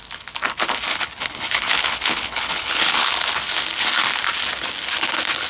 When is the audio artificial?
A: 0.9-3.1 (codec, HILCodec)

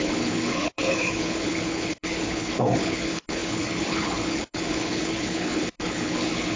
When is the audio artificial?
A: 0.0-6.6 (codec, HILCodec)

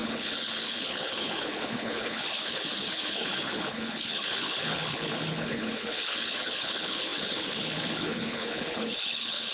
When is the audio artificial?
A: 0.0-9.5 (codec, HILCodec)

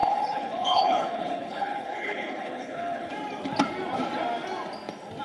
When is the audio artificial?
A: 0.0-3.1 (codec, HILCodec)

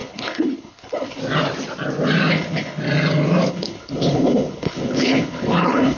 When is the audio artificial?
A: 0.0-1.2 (codec, HILCodec); 2.3-2.8; 3.5-6.0

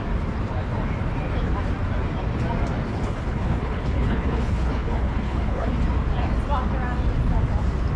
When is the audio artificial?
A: 2.9-5.7 (codec, HILCodec)